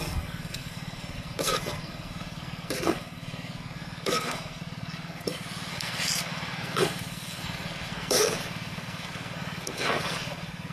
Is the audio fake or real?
fake